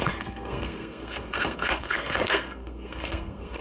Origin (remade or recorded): remade